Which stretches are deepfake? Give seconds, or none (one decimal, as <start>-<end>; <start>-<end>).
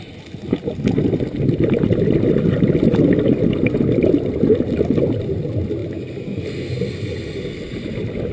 none